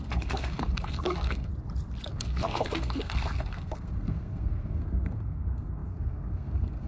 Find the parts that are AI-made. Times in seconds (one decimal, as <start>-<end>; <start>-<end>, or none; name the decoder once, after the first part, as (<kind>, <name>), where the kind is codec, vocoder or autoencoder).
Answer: 0.0-1.5 (codec, SNAC); 2.1-6.9